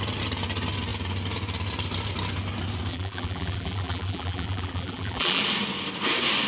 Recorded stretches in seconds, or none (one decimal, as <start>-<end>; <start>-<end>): 0.0-2.9; 5.4-6.5